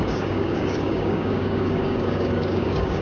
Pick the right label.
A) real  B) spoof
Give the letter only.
B